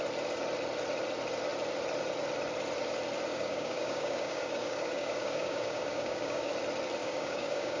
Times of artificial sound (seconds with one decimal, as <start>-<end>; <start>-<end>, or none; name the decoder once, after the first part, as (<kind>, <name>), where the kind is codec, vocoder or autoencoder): 3.3-6.5 (codec, DAC); 7.0-7.8